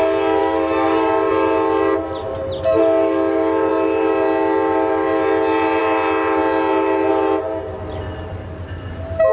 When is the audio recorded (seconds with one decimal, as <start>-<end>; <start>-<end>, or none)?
0.0-0.4; 1.3-9.3